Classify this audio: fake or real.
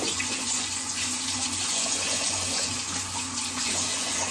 fake